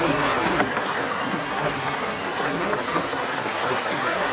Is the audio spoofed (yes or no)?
yes